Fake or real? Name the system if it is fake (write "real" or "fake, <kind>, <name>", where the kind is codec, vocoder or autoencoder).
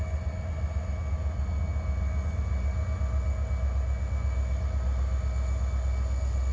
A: real